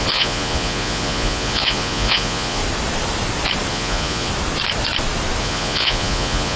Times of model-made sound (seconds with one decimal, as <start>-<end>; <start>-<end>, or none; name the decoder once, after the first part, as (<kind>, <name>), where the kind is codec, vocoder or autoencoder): 0.0-2.6 (vocoder, Vocos); 3.7-4.3; 5.4-6.6